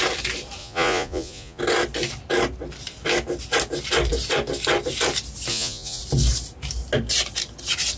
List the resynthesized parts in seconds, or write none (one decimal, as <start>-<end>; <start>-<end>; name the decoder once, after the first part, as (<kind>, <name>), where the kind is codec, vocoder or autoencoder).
0.6-1.6 (vocoder, Vocos); 5.5-6.0